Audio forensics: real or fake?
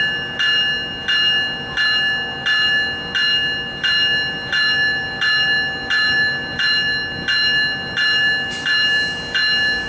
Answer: real